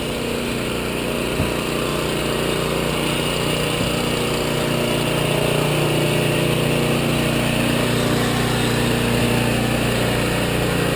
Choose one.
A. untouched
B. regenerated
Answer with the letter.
A